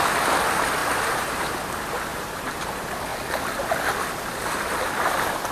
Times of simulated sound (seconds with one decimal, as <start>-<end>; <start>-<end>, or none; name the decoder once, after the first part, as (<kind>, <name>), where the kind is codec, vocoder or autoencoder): 0.8-1.5 (vocoder, BigVGAN v2); 2.1-2.7